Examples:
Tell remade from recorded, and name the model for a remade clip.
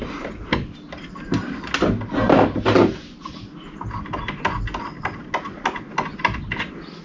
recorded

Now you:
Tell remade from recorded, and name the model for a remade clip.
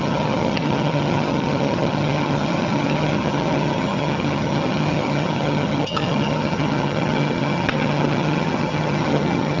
remade, vocoder, HiFi-GAN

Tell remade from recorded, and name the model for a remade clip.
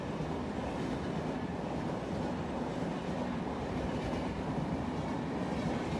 recorded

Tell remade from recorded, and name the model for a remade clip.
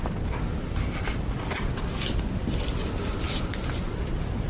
recorded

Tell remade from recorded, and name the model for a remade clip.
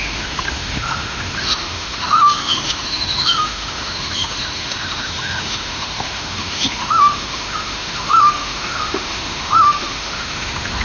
remade, autoencoder, DAC-VAE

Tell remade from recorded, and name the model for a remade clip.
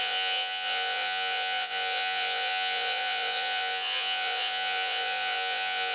remade, vocoder, Vocos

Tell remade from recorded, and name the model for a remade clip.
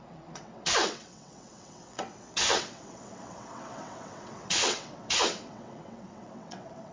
remade, vocoder, WaveNeXt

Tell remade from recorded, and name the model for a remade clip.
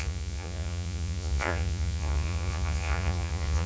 remade, vocoder, Vocos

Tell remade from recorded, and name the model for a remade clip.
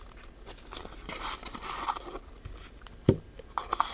recorded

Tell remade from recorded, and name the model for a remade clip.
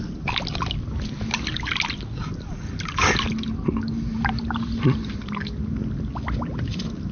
recorded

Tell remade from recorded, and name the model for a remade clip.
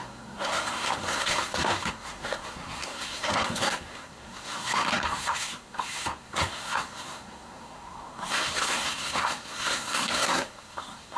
remade, codec, SNAC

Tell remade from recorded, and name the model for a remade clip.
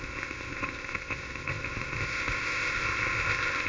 remade, codec, ZipCodec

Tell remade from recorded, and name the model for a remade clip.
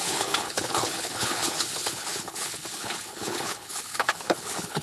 remade, codec, HILCodec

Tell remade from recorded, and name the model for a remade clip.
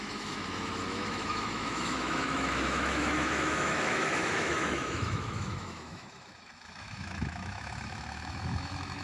remade, autoencoder, DAC-VAE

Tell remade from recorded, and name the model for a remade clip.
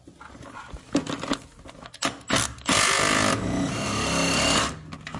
recorded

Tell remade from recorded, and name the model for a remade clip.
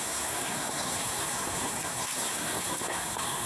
remade, codec, SNAC